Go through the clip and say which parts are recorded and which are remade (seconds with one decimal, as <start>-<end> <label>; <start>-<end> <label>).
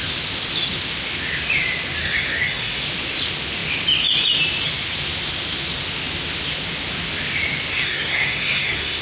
0.0-2.0 recorded; 2.0-2.8 remade; 2.8-7.7 recorded; 7.7-9.0 remade